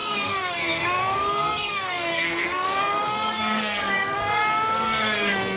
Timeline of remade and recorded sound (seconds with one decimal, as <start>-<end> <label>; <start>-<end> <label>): 0.0-5.6 remade